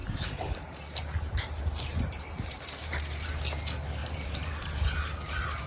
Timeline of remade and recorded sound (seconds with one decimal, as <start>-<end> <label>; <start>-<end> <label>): 0.0-3.4 remade; 3.4-4.0 recorded; 4.0-4.8 remade; 4.8-5.7 recorded